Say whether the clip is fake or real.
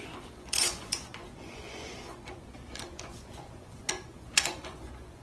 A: fake